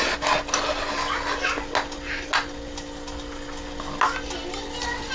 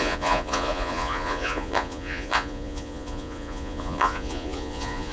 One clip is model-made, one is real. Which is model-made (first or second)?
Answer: second